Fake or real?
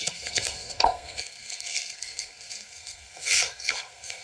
fake